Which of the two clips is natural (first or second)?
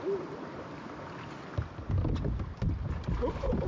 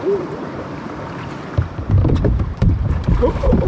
first